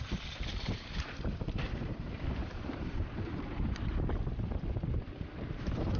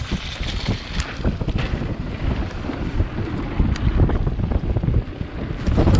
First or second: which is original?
second